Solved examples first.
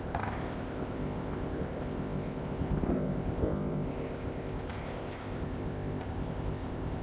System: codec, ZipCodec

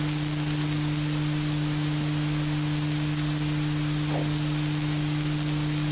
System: none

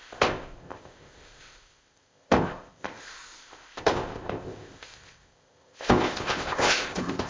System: codec, ZipCodec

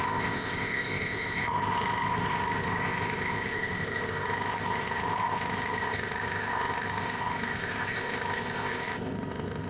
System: codec, ZipCodec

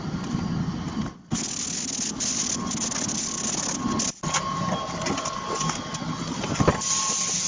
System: none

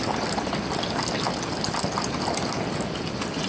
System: none